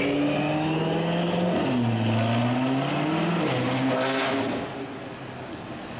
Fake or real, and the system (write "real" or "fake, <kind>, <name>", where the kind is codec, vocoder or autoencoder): real